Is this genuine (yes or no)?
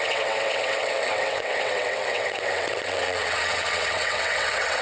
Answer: no